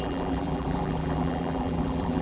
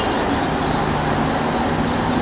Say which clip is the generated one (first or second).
first